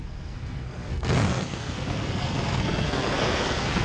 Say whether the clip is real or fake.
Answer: fake